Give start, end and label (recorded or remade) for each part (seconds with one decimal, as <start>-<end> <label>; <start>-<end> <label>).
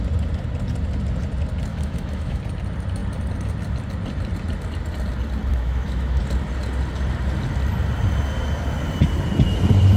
0.0-1.7 recorded; 1.7-2.4 remade; 2.4-5.5 recorded; 5.5-6.2 remade; 6.2-10.0 recorded